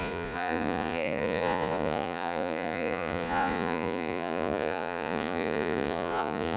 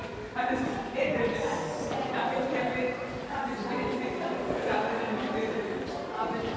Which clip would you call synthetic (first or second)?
first